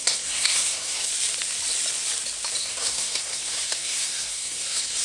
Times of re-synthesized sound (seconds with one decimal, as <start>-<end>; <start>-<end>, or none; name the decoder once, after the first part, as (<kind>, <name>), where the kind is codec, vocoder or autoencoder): 0.0-1.1 (codec, SNAC); 2.6-5.0

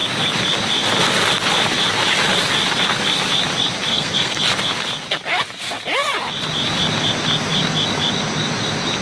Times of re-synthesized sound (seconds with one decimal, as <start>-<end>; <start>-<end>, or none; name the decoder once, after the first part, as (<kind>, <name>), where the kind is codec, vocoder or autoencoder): 3.9-4.4 (codec, SNAC)

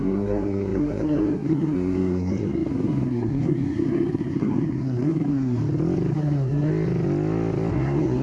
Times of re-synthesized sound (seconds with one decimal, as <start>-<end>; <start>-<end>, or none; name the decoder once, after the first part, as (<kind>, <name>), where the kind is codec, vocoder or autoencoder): 0.0-5.6 (codec, SNAC); 6.1-6.7; 7.7-8.2